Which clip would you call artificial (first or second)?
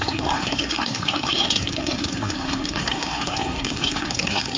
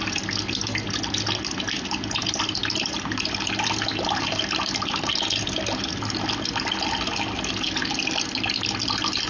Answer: first